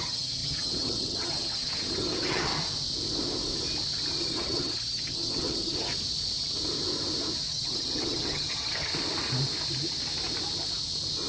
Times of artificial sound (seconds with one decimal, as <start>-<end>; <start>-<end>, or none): 0.0-2.5; 4.2-5.9; 7.5-8.9